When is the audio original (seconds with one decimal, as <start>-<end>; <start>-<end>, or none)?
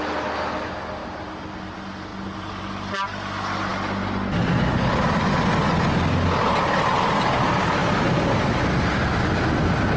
0.0-10.0